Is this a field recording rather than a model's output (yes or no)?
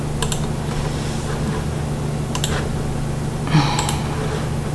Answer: yes